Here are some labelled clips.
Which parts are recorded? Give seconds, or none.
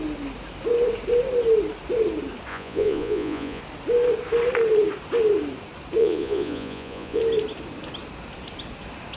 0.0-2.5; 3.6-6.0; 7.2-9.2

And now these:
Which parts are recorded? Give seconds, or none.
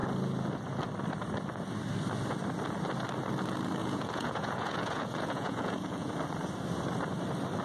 0.0-3.8; 6.1-7.6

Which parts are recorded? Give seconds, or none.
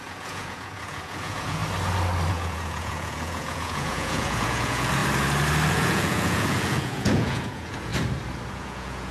1.6-2.3; 5.0-5.7; 7.9-8.5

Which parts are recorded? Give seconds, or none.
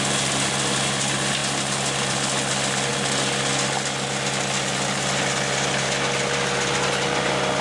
0.0-7.6